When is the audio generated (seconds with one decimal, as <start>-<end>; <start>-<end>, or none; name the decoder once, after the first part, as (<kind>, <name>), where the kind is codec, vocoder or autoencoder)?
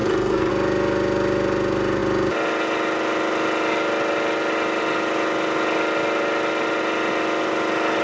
0.0-0.5 (codec, SNAC)